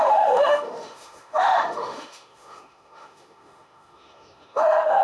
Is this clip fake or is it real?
fake